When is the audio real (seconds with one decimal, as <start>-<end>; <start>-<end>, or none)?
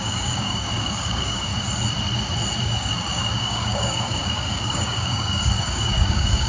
1.5-2.6